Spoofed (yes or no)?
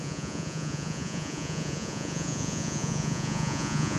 yes